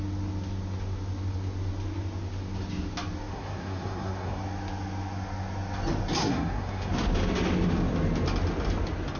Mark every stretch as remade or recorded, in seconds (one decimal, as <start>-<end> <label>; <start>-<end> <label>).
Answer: 0.0-3.3 recorded; 3.3-4.4 remade; 4.4-6.2 recorded; 6.2-6.9 remade; 6.9-9.2 recorded